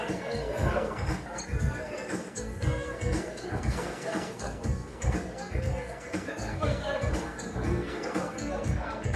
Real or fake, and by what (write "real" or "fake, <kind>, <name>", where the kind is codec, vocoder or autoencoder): fake, codec, SNAC